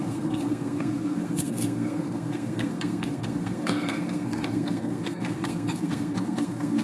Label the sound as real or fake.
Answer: fake